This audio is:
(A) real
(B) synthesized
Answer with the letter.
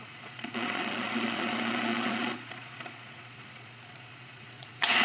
B